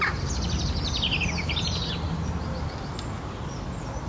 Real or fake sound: real